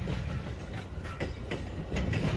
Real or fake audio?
real